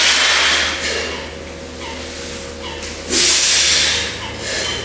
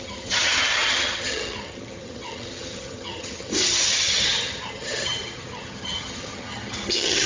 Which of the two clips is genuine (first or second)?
first